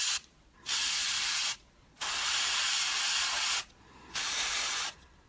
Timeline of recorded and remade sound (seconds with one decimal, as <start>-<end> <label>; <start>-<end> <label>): 0.0-5.3 remade